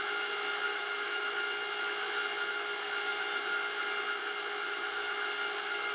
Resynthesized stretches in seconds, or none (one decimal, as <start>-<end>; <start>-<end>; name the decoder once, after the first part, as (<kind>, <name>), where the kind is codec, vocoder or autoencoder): 0.7-1.3 (autoencoder, DAC-VAE)